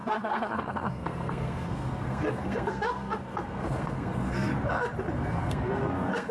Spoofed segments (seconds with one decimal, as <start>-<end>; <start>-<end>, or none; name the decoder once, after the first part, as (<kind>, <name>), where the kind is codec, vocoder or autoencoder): 0.0-4.5 (codec, SNAC); 5.1-6.3